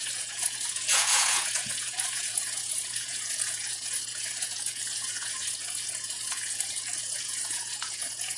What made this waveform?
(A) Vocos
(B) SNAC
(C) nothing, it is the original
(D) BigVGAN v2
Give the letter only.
A